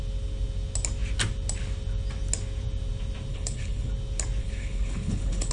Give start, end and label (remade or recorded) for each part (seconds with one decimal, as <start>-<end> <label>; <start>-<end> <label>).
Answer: 0.0-3.3 recorded; 3.3-3.9 remade; 3.9-4.4 recorded; 4.4-5.5 remade

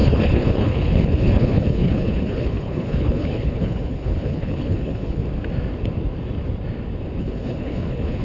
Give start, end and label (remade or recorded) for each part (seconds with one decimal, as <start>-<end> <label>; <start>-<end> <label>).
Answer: 0.0-5.2 remade; 5.2-7.2 recorded; 7.2-8.2 remade

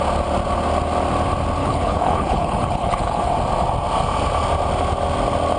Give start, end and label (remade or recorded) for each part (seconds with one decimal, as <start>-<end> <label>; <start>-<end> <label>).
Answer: 0.0-1.6 recorded; 1.6-3.3 remade; 3.3-5.6 recorded

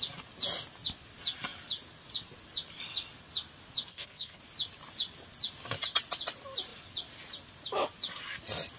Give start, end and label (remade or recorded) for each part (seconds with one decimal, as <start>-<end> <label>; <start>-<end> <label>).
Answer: 0.0-3.9 recorded; 3.9-4.4 remade; 4.4-8.8 recorded

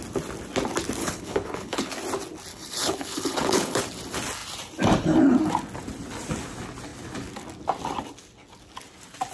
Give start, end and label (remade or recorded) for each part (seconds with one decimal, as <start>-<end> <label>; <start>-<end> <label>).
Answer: 0.0-1.0 recorded; 1.0-1.9 remade; 1.9-2.5 recorded; 2.5-3.8 remade; 3.8-9.3 recorded

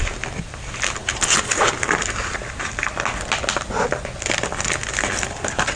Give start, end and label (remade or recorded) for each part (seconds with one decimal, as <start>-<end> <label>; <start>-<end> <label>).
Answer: 0.0-5.8 recorded